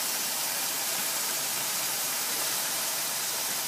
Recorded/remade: remade